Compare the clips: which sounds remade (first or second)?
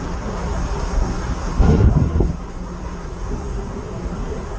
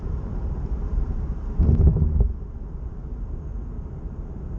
first